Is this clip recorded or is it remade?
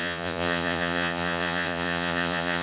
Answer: remade